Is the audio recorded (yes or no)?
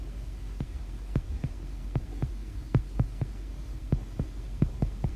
no